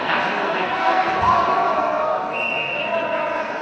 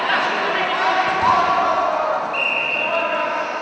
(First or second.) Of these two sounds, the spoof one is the first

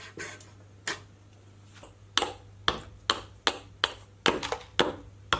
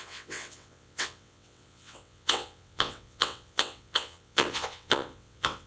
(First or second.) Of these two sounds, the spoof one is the second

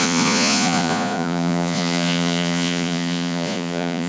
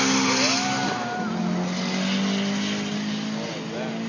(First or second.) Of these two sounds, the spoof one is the first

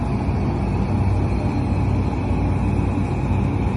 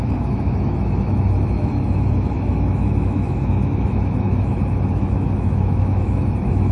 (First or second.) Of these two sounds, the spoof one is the second